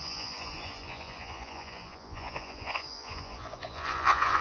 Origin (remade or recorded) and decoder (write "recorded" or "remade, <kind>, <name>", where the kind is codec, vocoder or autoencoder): remade, vocoder, Vocos